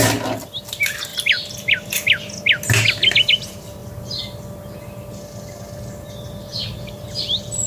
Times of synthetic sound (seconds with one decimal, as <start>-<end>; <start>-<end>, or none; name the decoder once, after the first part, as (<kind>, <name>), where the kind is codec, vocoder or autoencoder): none